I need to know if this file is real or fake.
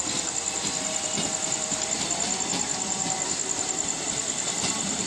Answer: fake